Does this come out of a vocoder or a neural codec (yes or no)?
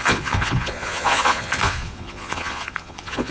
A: yes